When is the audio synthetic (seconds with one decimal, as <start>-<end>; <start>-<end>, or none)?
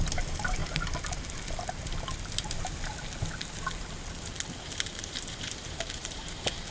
0.0-0.6; 4.6-6.7